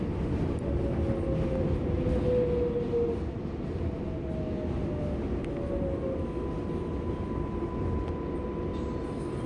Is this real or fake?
real